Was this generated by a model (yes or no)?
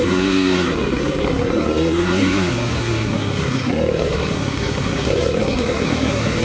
yes